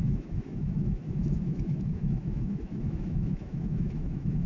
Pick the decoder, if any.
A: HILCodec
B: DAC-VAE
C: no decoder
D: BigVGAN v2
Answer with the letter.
B